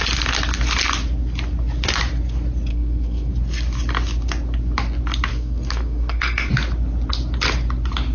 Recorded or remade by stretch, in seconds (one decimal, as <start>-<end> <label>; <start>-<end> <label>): 0.0-2.7 recorded; 2.7-3.3 remade; 3.3-5.3 recorded; 5.3-6.5 remade; 6.5-8.1 recorded